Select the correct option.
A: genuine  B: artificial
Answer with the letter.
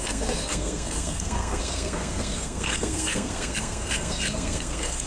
B